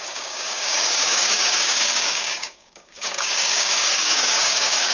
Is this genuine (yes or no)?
no